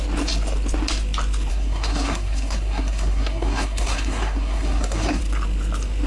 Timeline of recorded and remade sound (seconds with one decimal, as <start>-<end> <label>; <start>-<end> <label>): 0.0-1.5 recorded; 1.5-5.2 remade; 5.2-6.1 recorded